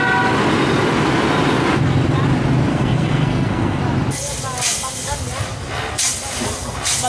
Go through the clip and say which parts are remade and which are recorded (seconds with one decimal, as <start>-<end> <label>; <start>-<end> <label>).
0.0-2.7 recorded; 2.7-3.8 remade; 3.8-7.1 recorded